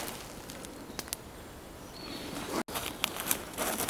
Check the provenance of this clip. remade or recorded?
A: recorded